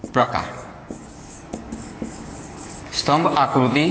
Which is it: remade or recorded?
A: remade